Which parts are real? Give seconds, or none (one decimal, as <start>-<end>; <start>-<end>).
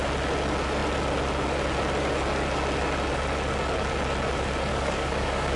0.0-4.7